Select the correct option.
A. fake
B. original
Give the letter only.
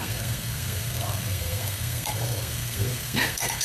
A